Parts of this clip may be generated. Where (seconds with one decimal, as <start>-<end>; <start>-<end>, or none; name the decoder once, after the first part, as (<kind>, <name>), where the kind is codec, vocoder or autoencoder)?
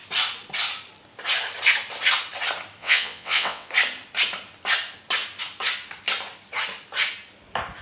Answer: 2.8-3.7 (vocoder, WaveNeXt)